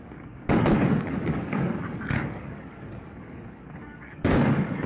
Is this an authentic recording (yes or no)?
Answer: no